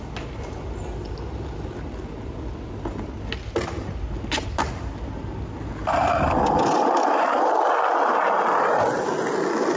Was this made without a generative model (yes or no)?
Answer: yes